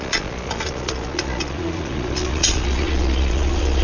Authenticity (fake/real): fake